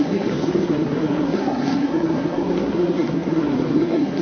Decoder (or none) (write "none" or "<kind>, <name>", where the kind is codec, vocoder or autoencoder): codec, SNAC